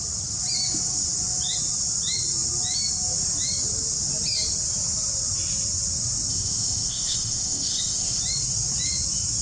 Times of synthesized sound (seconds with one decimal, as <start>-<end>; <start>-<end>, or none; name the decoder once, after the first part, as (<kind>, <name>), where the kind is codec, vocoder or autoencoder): 6.3-8.2 (codec, ZipCodec)